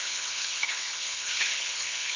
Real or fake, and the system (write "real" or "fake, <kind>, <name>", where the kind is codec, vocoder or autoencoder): fake, codec, HILCodec